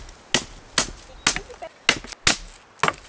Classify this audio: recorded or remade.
recorded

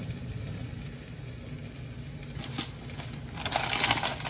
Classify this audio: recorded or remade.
recorded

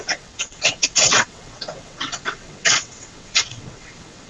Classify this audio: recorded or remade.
remade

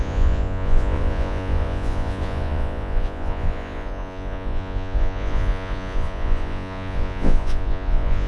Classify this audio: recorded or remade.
remade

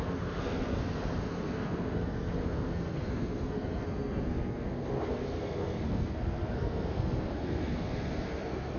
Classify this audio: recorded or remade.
remade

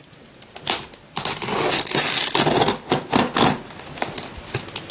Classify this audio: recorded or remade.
recorded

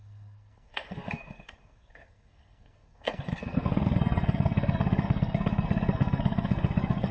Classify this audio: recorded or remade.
remade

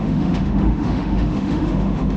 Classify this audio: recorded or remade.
remade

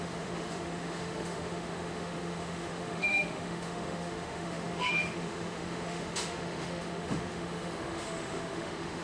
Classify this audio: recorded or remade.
remade